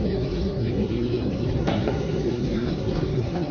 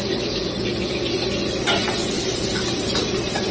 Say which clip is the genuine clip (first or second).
second